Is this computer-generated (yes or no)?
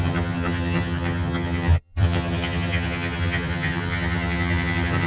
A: yes